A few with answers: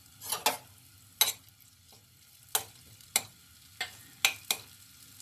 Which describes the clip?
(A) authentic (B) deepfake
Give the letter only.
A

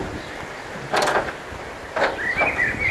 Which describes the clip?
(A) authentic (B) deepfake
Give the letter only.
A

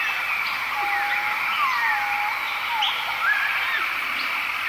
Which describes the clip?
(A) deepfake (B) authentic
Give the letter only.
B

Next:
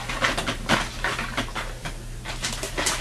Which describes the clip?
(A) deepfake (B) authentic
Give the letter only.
B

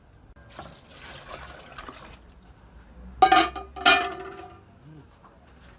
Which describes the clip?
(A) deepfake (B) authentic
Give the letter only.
B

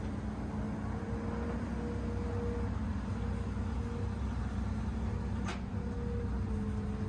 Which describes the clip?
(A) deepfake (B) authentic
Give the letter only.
B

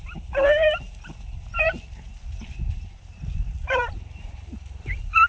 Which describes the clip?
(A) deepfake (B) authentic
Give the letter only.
A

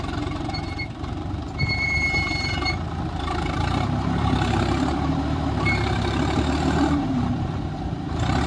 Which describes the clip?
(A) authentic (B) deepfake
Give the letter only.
B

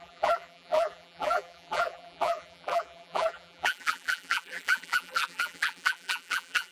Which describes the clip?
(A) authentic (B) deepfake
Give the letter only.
B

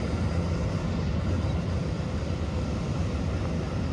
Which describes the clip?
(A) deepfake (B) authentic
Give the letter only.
B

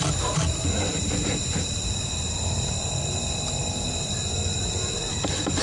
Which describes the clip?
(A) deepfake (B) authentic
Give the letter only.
A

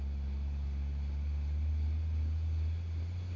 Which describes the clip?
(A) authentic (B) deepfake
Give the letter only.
A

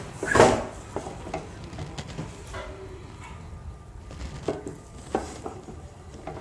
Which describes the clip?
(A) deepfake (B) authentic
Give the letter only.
A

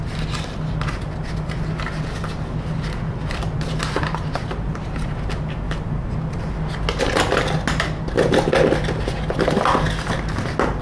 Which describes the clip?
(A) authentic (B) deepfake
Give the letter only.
A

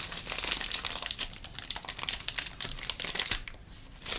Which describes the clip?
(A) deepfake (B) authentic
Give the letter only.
A